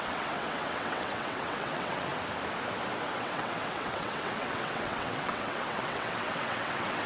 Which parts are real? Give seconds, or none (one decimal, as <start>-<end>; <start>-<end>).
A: 2.1-3.0